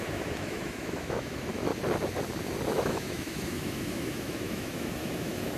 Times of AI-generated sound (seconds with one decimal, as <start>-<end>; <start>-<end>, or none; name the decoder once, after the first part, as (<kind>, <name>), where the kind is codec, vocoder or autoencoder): 0.0-1.7 (autoencoder, DAC-VAE); 2.7-5.6